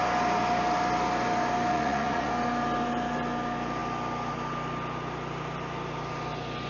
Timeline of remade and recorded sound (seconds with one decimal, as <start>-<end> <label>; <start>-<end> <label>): 0.0-1.7 recorded; 1.7-2.3 remade; 2.3-6.7 recorded